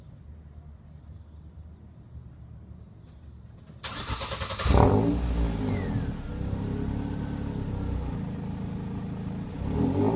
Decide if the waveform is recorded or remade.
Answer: recorded